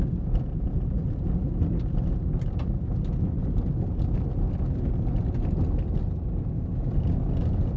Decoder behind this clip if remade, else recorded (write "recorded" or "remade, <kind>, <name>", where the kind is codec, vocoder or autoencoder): recorded